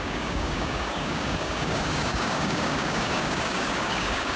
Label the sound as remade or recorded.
remade